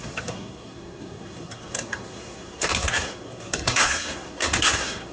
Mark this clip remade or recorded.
remade